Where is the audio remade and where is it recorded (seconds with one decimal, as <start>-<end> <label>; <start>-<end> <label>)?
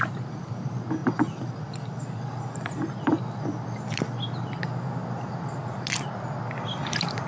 0.0-7.3 recorded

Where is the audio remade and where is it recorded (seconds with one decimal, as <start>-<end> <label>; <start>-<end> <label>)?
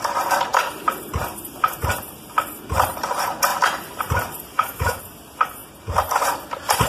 0.0-4.5 recorded; 4.5-5.0 remade; 5.0-6.9 recorded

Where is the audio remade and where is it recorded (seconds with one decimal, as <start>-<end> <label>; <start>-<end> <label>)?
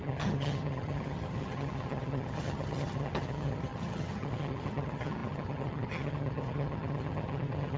0.0-7.8 remade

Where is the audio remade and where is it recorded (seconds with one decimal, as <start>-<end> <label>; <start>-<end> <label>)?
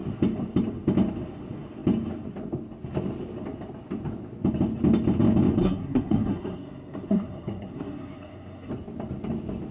0.0-5.6 recorded; 5.6-8.7 remade; 8.7-9.7 recorded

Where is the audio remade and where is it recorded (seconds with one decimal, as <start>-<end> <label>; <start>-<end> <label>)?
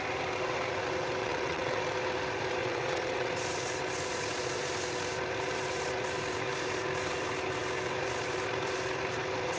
0.0-1.2 recorded; 1.2-1.8 remade; 1.8-2.6 recorded; 2.6-3.3 remade; 3.3-9.6 recorded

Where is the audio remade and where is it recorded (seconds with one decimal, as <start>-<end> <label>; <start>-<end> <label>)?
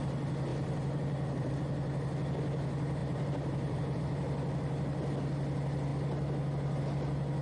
0.0-0.5 recorded; 0.5-1.5 remade; 1.5-3.0 recorded; 3.0-4.0 remade; 4.0-7.4 recorded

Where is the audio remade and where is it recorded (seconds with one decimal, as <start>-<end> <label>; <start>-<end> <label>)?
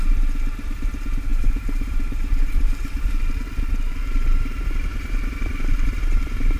0.0-1.3 recorded; 1.3-3.2 remade; 3.2-4.9 recorded; 4.9-6.6 remade